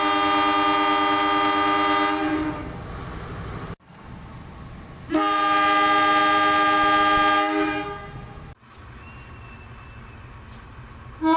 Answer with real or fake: real